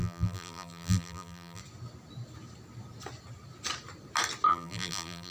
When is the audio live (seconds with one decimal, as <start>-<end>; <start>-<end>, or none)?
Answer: 1.6-4.5